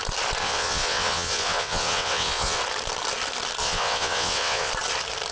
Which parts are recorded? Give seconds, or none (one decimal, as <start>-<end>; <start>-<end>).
0.0-0.4; 2.6-3.6; 4.7-5.3